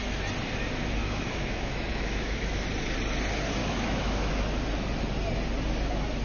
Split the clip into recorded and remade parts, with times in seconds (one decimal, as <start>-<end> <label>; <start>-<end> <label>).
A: 0.0-1.0 recorded; 1.0-2.6 remade; 2.6-3.6 recorded; 3.6-4.3 remade; 4.3-6.2 recorded